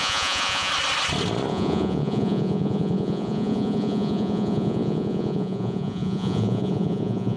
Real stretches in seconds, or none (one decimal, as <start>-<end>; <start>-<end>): 0.7-1.5